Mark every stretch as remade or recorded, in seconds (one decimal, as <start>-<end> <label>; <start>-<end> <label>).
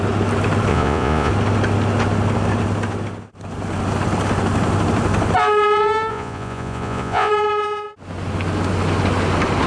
0.0-0.7 recorded; 0.7-1.3 remade; 1.3-6.1 recorded; 6.1-7.3 remade; 7.3-9.7 recorded